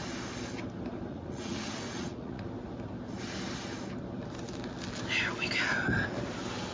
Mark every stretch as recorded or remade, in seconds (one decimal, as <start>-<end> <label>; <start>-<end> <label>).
0.0-1.1 recorded; 1.1-2.4 remade; 2.4-6.7 recorded